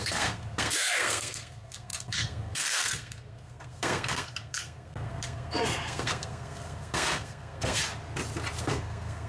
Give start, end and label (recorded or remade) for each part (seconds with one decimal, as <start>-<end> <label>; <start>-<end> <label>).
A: 0.0-7.8 remade; 7.8-8.6 recorded; 8.6-9.3 remade